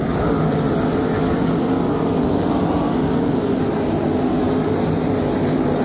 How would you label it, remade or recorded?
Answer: recorded